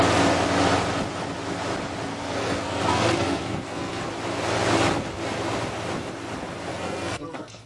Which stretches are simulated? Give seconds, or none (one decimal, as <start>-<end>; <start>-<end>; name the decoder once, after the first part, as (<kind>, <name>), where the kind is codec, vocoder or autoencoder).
2.1-4.0 (codec, SNAC); 6.7-7.7